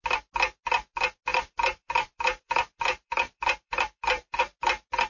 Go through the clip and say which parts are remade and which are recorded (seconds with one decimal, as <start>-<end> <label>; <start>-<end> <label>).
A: 0.0-1.3 recorded; 1.3-4.4 remade; 4.4-5.1 recorded